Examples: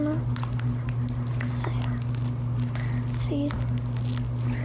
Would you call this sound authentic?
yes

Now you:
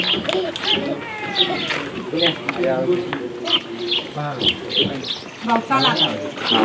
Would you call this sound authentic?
yes